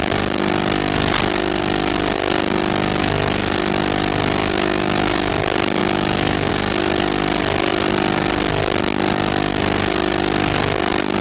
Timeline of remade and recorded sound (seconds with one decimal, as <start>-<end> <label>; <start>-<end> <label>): 0.0-4.4 recorded; 4.4-5.3 remade; 5.3-5.8 recorded; 5.8-6.5 remade; 6.5-11.2 recorded